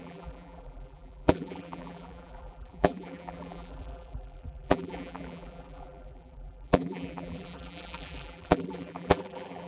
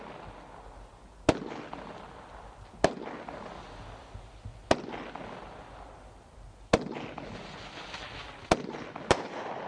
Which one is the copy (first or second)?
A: first